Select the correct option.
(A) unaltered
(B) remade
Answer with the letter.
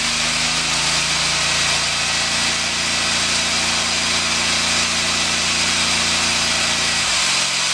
A